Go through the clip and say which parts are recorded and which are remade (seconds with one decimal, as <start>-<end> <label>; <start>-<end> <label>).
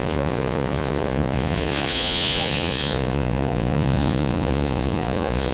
0.0-5.5 remade